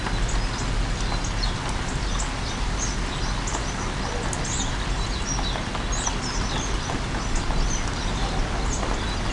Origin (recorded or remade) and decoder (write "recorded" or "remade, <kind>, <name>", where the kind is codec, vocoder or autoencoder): recorded